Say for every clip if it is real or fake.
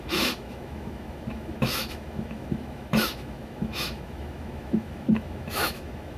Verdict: fake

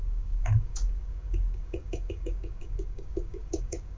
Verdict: fake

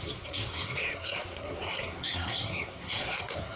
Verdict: fake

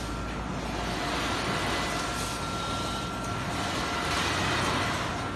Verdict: real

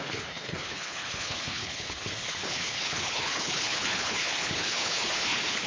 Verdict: fake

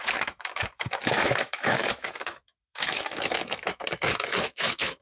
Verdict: fake